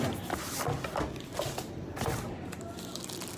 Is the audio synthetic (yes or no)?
no